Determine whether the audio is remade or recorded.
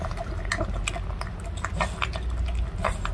recorded